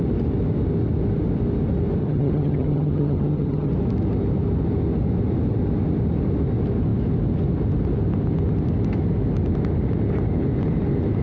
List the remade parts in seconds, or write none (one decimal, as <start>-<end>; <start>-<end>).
2.0-3.7